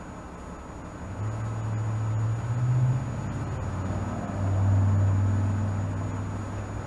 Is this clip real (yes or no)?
yes